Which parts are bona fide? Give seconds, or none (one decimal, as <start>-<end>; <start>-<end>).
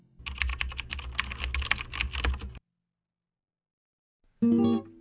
0.0-5.0